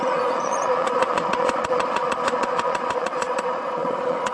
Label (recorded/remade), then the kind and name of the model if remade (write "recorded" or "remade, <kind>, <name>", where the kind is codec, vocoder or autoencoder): remade, vocoder, Vocos